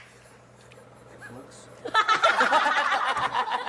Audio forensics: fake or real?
real